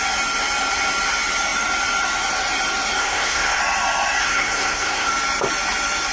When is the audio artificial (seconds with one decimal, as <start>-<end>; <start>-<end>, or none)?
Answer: 3.0-3.6; 4.2-5.1